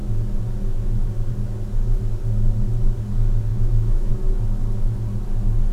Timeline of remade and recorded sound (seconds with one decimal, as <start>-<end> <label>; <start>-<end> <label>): 0.0-3.5 recorded; 3.5-4.1 remade; 4.1-5.7 recorded